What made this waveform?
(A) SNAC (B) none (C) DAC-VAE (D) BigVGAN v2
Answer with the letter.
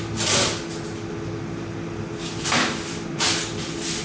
B